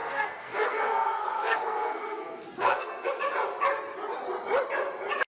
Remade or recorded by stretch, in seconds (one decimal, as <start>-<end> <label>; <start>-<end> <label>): 0.0-3.2 remade; 3.2-5.3 recorded